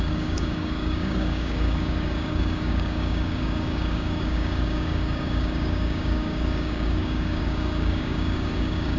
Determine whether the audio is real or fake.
fake